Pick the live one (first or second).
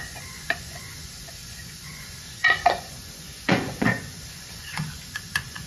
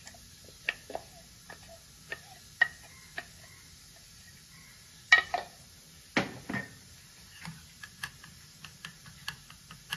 second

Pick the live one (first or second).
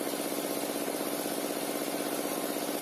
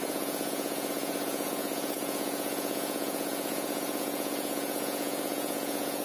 first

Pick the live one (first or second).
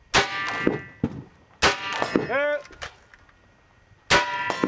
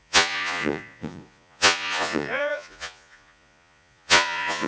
first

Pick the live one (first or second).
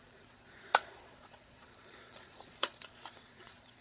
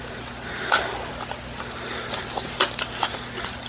second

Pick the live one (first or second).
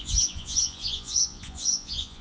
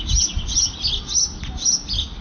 second